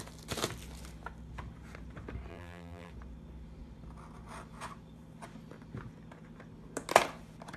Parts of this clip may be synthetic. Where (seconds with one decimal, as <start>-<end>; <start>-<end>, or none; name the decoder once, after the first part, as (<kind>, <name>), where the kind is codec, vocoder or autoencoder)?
2.3-2.9 (vocoder, BigVGAN v2)